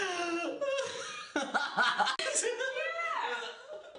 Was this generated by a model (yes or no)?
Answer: no